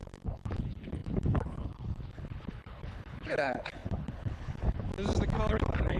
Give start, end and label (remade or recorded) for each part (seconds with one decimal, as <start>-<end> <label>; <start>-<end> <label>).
0.0-4.9 remade; 4.9-5.5 recorded; 5.5-6.0 remade